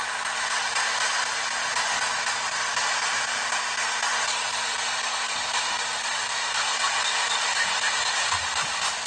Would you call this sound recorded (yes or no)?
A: yes